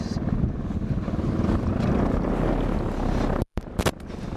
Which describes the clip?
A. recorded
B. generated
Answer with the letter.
A